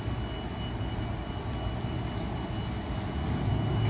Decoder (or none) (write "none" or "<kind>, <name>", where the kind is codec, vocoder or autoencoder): none